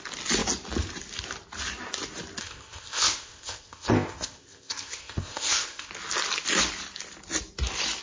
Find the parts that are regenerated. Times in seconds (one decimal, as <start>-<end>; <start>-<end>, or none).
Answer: 2.4-5.9